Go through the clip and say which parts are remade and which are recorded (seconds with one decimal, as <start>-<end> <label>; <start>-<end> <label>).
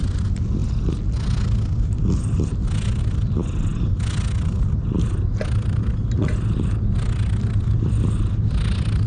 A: 0.0-9.1 recorded